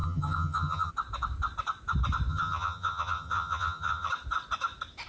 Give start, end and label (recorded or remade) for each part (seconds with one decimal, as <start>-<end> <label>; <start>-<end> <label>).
0.0-0.9 remade; 0.9-2.3 recorded; 2.3-4.1 remade; 4.1-5.1 recorded